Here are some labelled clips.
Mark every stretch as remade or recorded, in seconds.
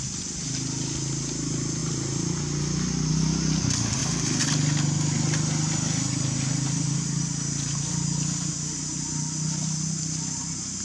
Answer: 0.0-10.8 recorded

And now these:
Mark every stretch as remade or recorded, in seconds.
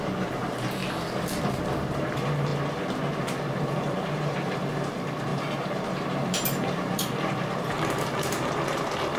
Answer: 0.0-0.8 remade; 0.8-1.4 recorded; 1.4-2.5 remade; 2.5-3.6 recorded; 3.6-9.2 remade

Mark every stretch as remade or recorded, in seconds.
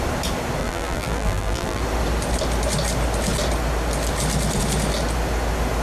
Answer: 0.0-0.6 recorded; 0.6-1.8 remade; 1.8-5.8 recorded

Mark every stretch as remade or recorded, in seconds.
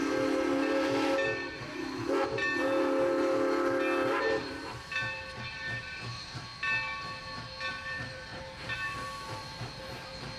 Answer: 0.0-4.2 recorded; 4.2-6.5 remade; 6.5-7.7 recorded; 7.7-10.4 remade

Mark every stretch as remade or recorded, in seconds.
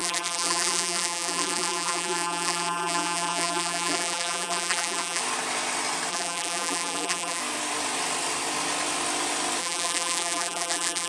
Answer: 0.0-5.2 remade; 5.2-6.1 recorded; 6.1-7.4 remade; 7.4-9.6 recorded; 9.6-11.1 remade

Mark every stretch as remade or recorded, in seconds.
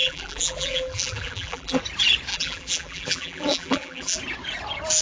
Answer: 0.0-1.8 remade; 1.8-2.3 recorded; 2.3-4.2 remade; 4.2-5.0 recorded